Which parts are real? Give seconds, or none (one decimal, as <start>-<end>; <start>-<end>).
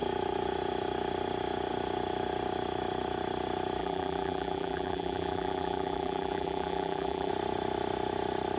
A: 0.0-3.8; 7.3-8.6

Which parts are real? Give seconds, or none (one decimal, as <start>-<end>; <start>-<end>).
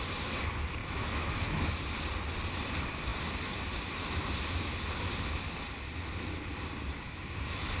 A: 0.0-0.8; 1.7-7.8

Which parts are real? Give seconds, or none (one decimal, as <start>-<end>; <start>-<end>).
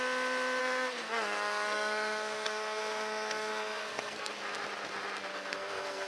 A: 0.0-0.6; 4.3-5.3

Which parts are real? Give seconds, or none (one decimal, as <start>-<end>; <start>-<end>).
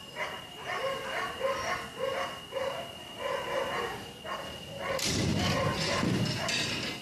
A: 0.0-7.0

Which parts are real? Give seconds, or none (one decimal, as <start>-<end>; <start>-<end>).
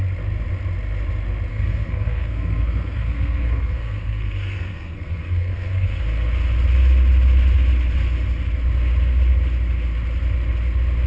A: 0.0-1.5; 6.0-11.1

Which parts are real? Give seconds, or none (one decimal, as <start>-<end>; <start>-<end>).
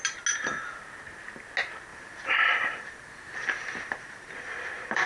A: 0.0-1.9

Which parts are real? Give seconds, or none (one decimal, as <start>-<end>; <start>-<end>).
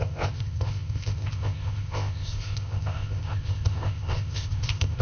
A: none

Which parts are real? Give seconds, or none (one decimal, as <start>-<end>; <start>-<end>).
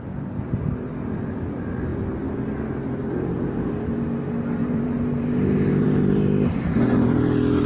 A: 0.0-1.9; 3.9-4.6; 7.2-7.7